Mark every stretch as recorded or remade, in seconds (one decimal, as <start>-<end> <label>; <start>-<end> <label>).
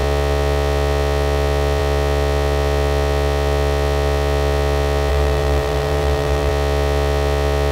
0.0-5.1 recorded; 5.1-6.5 remade; 6.5-7.7 recorded